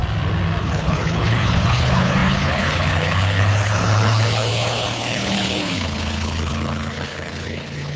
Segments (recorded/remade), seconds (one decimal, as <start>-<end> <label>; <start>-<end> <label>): 0.0-0.6 recorded; 0.6-8.0 remade